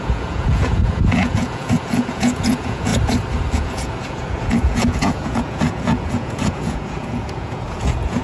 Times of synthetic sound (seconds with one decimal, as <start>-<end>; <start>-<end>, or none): 0.0-2.9; 3.5-8.2